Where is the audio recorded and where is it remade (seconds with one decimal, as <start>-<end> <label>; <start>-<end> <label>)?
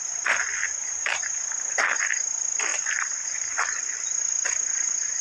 0.0-2.7 recorded; 2.7-4.1 remade; 4.1-5.2 recorded